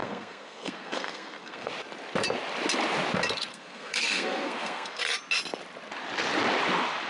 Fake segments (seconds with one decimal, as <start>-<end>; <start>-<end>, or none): 0.0-1.7; 3.5-5.0